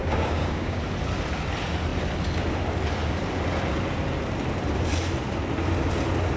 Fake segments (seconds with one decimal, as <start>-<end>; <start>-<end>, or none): 0.0-0.8